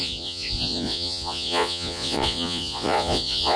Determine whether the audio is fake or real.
fake